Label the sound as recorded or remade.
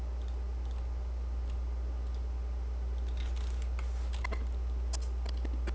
recorded